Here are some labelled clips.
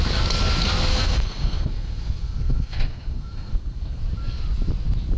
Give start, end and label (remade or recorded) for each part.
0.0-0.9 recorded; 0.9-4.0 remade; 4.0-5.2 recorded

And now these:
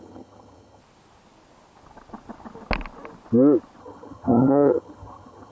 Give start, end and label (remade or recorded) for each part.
0.0-0.8 remade; 0.8-3.8 recorded; 3.8-5.5 remade

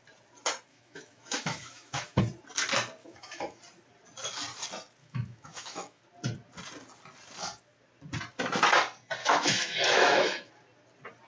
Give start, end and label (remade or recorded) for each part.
0.0-0.7 recorded; 0.7-2.2 remade; 2.2-3.0 recorded; 3.0-3.6 remade; 3.6-5.0 recorded; 5.0-6.0 remade; 6.0-9.2 recorded; 9.2-10.5 remade; 10.5-11.3 recorded